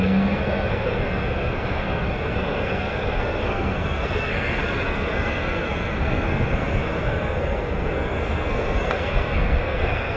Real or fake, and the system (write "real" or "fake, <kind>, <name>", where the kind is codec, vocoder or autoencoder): fake, codec, SNAC